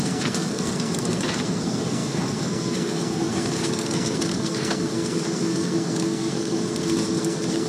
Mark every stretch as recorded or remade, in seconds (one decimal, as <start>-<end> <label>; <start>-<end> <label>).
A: 0.0-7.7 remade